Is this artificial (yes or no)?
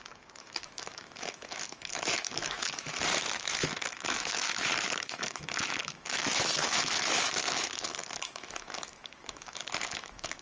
yes